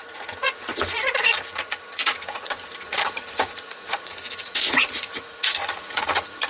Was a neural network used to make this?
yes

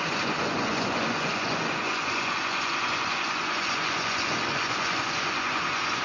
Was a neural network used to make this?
yes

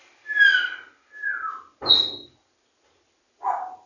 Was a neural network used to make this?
no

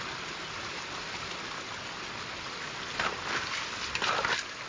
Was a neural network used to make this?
no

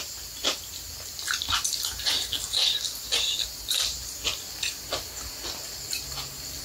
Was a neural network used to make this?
no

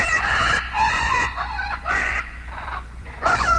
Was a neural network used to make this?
yes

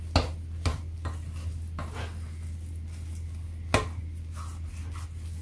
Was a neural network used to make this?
no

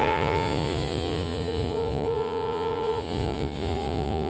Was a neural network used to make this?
yes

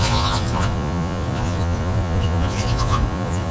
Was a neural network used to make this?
yes